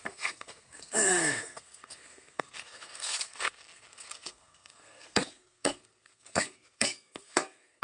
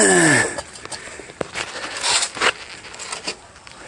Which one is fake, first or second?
first